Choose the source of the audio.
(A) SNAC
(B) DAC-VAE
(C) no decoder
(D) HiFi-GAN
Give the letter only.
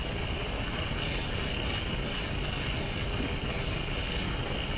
C